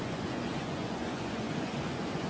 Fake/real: fake